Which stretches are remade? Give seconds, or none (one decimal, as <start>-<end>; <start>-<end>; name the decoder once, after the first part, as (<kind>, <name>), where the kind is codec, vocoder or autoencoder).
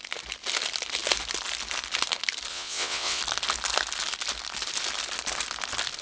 2.5-3.2 (vocoder, WaveNeXt)